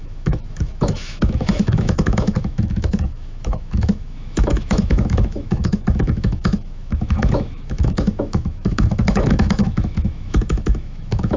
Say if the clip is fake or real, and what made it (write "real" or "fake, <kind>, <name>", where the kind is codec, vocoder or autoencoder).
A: fake, autoencoder, DAC-VAE